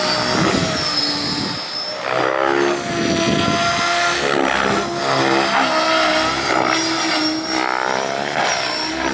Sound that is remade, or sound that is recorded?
recorded